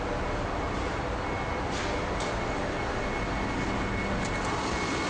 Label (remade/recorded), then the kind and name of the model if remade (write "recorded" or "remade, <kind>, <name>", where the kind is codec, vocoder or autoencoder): recorded